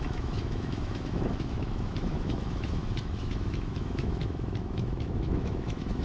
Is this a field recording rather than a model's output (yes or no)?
no